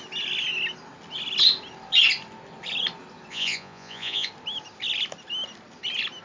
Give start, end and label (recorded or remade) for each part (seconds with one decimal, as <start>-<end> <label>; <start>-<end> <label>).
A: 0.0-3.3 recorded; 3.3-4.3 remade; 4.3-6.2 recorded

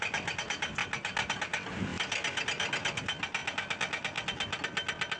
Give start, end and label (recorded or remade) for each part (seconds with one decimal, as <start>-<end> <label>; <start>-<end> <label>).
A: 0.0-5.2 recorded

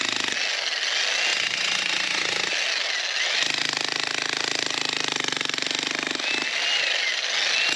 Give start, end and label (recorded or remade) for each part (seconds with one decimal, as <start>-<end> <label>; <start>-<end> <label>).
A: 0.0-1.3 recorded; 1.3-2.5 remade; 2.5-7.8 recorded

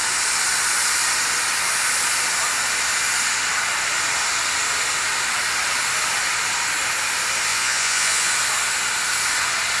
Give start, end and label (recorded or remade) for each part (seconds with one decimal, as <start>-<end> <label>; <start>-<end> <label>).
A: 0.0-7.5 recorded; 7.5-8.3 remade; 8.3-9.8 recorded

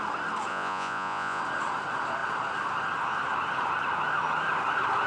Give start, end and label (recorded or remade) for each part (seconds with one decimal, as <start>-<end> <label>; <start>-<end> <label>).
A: 0.0-0.5 recorded; 0.5-1.4 remade; 1.4-5.1 recorded

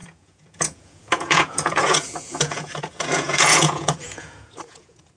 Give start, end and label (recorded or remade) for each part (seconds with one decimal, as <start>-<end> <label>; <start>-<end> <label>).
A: 0.0-5.2 remade

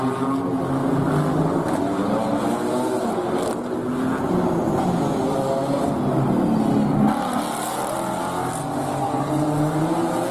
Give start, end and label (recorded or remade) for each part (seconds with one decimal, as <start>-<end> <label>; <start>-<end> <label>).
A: 0.0-10.3 recorded